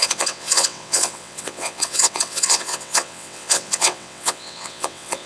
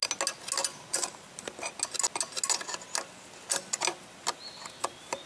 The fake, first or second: first